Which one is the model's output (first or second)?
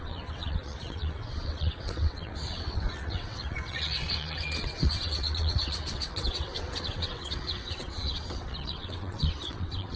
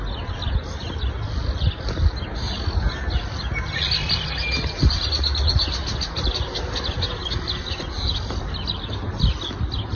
first